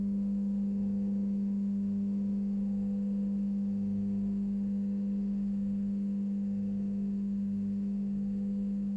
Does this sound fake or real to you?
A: fake